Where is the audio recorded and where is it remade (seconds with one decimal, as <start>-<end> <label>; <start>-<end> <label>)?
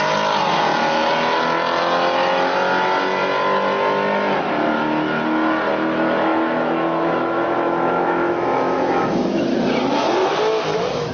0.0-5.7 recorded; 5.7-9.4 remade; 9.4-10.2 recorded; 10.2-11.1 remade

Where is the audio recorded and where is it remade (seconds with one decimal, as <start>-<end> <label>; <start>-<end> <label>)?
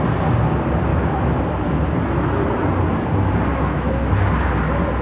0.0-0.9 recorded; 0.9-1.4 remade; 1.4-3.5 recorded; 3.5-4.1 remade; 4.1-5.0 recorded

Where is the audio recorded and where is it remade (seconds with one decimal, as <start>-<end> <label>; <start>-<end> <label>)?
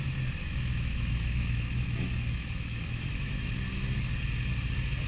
0.0-0.4 recorded; 0.4-3.5 remade; 3.5-5.1 recorded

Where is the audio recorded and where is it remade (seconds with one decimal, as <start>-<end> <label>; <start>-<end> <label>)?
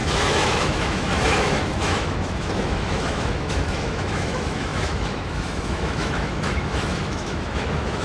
0.0-8.0 remade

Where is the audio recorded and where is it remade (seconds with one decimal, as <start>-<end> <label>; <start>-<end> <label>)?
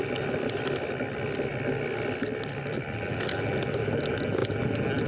0.0-5.1 recorded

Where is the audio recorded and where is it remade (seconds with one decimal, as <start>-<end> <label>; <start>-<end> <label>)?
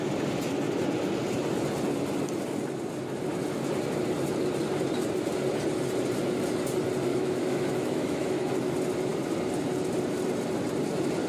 0.0-7.1 recorded; 7.1-8.5 remade; 8.5-11.3 recorded